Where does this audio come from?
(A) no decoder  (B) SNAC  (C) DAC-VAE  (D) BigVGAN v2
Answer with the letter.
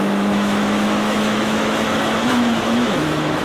C